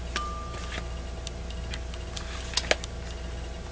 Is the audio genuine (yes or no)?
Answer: yes